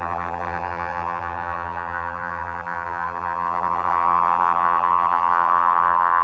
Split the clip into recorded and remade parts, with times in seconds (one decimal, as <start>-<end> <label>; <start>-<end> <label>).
0.0-6.2 remade